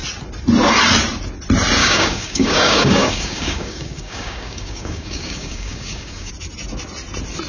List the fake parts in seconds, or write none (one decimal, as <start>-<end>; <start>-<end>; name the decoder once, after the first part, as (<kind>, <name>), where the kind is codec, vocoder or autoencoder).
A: 1.8-6.3 (codec, DAC)